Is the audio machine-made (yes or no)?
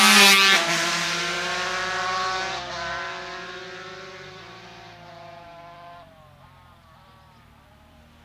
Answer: no